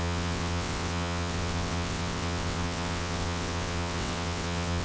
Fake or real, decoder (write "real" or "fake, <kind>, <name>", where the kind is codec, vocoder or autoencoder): fake, vocoder, WaveNeXt